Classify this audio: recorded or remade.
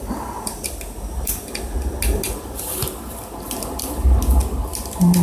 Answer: recorded